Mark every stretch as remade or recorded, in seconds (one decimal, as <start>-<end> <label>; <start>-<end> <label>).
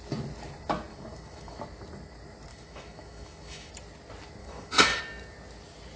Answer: 0.0-0.9 recorded; 0.9-1.6 remade; 1.6-2.5 recorded; 2.5-3.7 remade; 3.7-4.4 recorded; 4.4-5.0 remade; 5.0-6.0 recorded